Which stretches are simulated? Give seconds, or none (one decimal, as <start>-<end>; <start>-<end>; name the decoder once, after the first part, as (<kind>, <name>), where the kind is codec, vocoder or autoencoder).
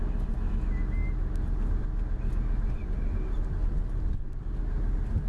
none